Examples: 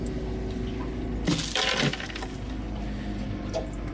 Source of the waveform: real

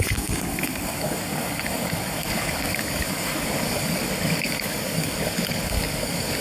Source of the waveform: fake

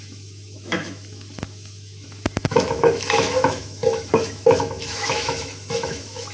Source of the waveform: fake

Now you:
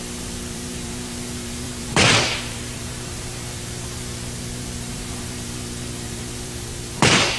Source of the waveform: fake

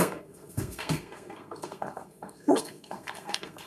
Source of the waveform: fake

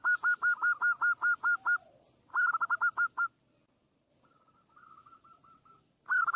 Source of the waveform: real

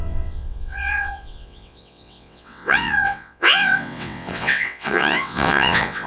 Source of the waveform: fake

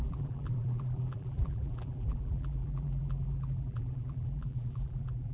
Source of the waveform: fake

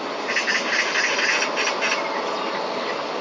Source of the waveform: real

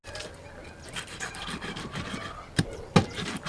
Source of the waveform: real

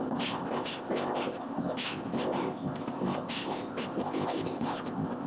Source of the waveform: fake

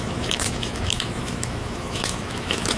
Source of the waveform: fake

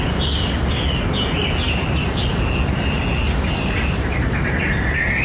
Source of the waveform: real